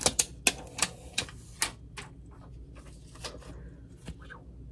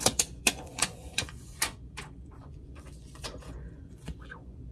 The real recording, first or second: first